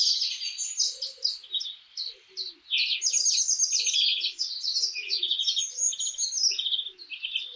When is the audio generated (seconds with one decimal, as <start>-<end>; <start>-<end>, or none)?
4.1-5.8